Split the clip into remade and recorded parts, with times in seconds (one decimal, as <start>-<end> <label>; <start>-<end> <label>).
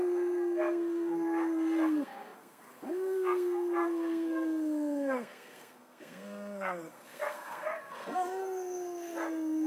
0.0-9.7 remade